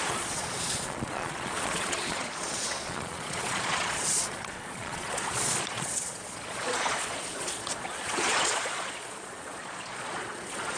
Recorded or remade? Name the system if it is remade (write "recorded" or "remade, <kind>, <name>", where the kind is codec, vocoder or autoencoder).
remade, vocoder, Vocos